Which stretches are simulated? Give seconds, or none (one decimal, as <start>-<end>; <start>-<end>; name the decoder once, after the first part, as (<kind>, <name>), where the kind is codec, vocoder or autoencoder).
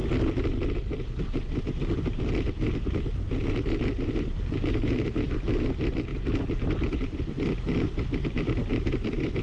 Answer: 6.1-7.2 (vocoder, BigVGAN v2); 8.7-9.4